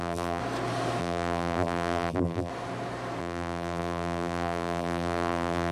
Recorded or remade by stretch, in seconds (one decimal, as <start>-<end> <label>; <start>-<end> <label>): 0.0-0.4 remade; 0.4-1.0 recorded; 1.0-2.5 remade; 2.5-3.2 recorded; 3.2-5.7 remade